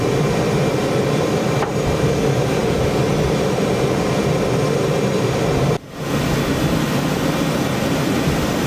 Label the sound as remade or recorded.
remade